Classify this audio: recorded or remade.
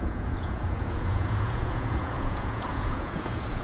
remade